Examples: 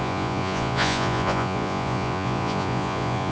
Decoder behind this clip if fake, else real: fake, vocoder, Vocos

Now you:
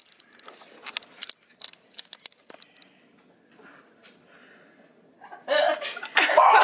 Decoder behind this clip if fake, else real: real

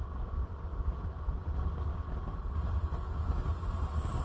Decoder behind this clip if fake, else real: real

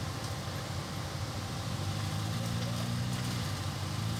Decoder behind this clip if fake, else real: real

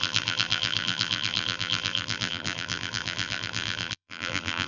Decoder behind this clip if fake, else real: fake, vocoder, BigVGAN v2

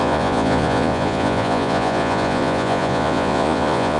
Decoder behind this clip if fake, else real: fake, vocoder, Vocos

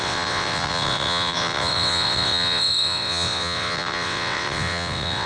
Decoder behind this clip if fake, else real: fake, vocoder, WaveNeXt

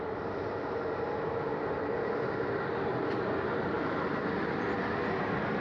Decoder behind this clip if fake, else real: real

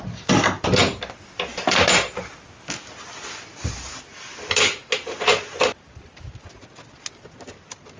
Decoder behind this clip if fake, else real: real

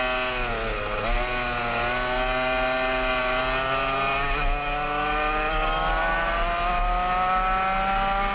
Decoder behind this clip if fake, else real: real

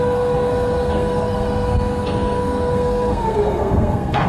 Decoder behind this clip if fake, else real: fake, codec, SNAC